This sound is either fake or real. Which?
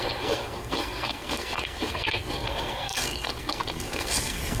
fake